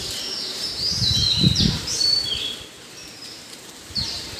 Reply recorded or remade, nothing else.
remade